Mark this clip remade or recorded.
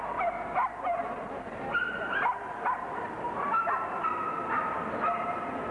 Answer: recorded